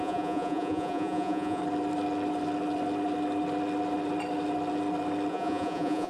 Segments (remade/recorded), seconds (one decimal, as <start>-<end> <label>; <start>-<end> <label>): 0.0-1.6 remade; 1.6-5.3 recorded; 5.3-6.1 remade

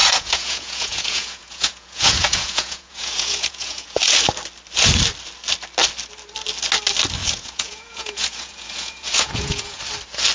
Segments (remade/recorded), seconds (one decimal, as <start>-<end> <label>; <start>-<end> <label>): 0.0-4.0 remade; 4.0-7.2 recorded; 7.2-9.8 remade; 9.8-10.3 recorded

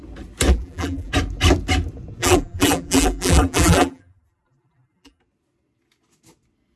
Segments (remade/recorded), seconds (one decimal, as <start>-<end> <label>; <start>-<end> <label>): 0.0-0.5 recorded; 0.5-1.1 remade; 1.1-2.2 recorded; 2.2-5.2 remade; 5.2-6.8 recorded

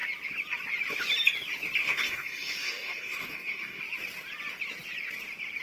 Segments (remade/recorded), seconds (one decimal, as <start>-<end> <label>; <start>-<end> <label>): 0.0-1.8 recorded; 1.8-3.8 remade; 3.8-5.6 recorded